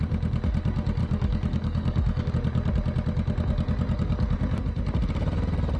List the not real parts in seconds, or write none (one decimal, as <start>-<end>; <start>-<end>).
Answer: 1.0-2.3